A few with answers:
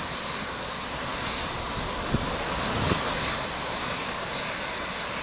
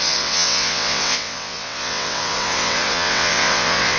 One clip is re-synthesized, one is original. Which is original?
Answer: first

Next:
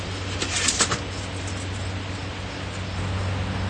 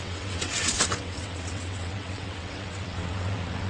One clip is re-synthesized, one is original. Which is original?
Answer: first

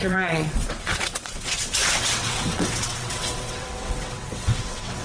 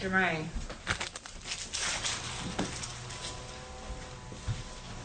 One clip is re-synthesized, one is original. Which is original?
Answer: second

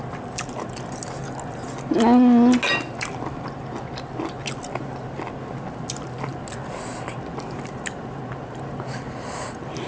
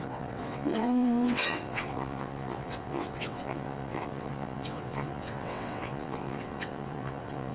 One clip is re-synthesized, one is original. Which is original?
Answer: first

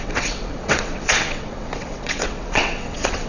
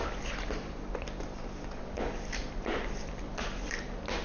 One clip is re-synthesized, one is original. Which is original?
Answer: second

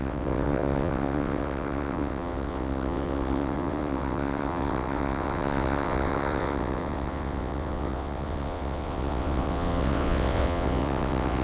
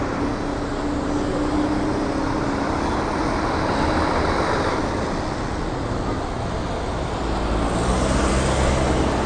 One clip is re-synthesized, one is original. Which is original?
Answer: second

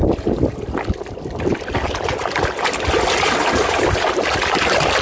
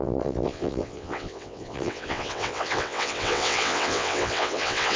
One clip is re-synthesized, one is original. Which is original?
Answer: first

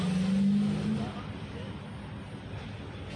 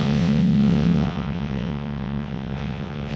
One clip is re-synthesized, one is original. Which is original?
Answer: first